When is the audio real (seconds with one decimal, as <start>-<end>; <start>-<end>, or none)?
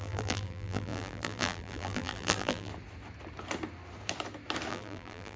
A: 2.7-4.7